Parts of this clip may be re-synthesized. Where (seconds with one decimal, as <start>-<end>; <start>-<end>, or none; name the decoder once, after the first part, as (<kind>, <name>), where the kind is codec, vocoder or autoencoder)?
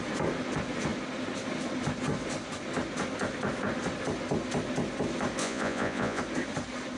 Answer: 5.4-6.2 (vocoder, Vocos)